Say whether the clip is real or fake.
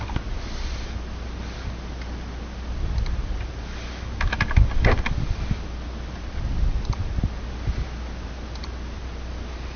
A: real